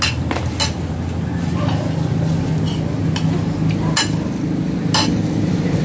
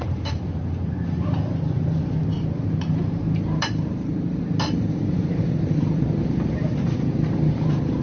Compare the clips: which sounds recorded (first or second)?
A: first